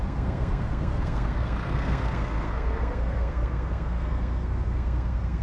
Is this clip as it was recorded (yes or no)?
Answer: no